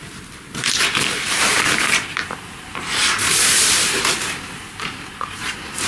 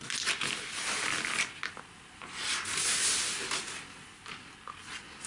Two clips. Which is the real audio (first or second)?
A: second